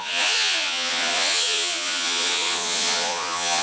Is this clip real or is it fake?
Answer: fake